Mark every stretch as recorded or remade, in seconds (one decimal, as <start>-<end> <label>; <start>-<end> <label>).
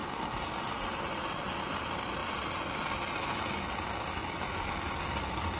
0.0-5.6 recorded